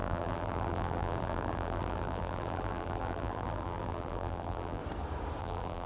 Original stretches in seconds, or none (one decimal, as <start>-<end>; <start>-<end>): 4.8-5.4